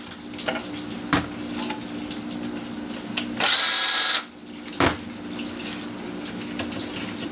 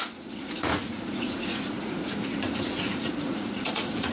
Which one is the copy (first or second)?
second